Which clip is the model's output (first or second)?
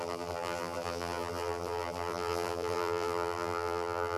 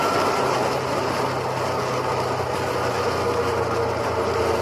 first